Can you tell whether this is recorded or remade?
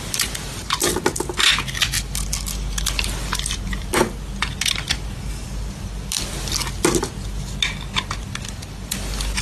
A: recorded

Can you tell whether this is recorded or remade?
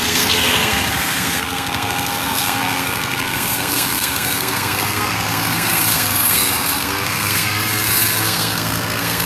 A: remade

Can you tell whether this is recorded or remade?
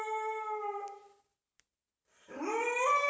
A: recorded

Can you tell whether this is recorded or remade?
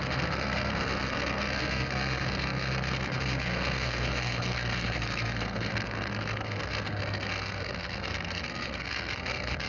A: remade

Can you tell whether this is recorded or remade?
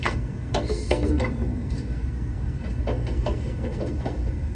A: remade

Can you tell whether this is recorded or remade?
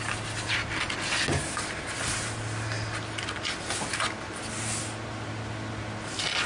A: recorded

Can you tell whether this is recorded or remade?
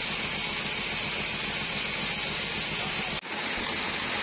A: recorded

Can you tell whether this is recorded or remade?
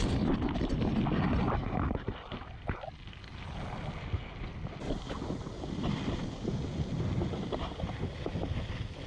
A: recorded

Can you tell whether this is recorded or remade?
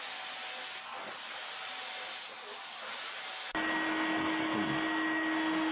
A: recorded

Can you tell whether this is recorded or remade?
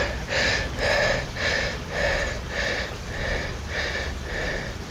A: recorded